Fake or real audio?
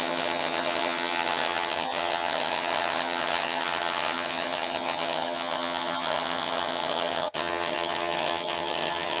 fake